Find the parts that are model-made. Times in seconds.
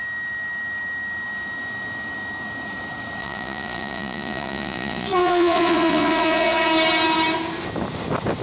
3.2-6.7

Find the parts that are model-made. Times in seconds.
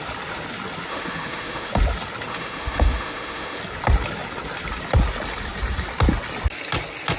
0.9-1.7; 2.3-3.6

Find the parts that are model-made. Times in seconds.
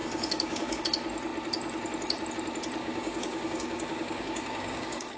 0.0-0.8; 2.8-5.2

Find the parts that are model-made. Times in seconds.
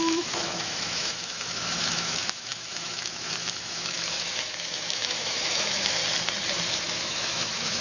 0.0-6.0; 6.8-7.8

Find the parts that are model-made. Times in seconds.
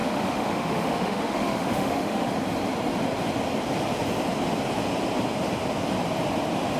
0.0-2.3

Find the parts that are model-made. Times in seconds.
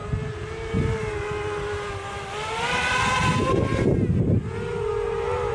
3.3-3.7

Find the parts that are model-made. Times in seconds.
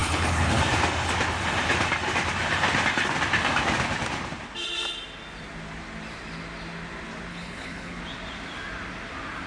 0.0-0.6; 7.3-8.0